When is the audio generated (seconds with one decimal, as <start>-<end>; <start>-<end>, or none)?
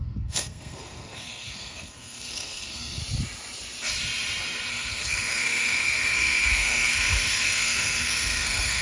0.0-3.0; 4.7-8.8